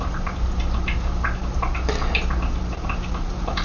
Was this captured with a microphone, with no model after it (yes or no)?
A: yes